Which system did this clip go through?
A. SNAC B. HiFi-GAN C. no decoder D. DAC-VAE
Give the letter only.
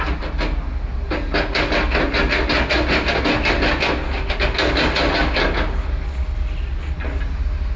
C